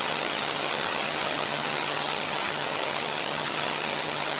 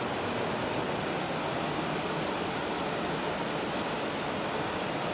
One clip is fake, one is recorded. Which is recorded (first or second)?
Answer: second